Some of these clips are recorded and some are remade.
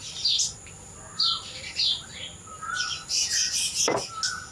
recorded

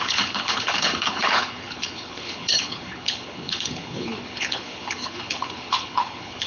remade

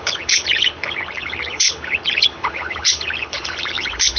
remade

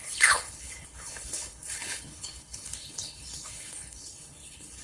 remade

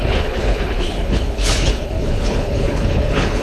remade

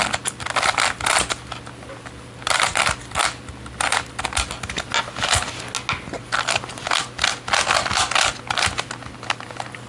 recorded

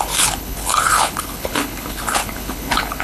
remade